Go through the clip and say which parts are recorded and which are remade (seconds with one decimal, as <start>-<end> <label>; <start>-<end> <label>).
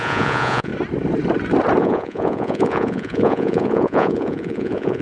0.0-0.7 remade; 0.7-1.8 recorded; 1.8-5.0 remade